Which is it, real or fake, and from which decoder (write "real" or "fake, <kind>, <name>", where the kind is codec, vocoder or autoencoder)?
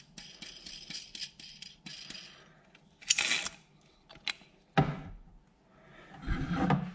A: real